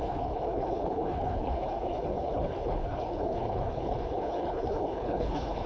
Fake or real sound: fake